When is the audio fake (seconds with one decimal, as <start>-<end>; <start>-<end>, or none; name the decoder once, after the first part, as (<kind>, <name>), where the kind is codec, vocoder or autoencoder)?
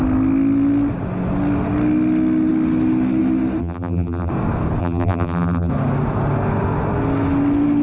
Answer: 3.6-4.3 (vocoder, BigVGAN v2); 4.8-5.7